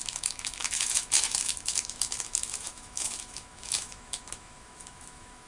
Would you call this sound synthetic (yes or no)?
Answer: yes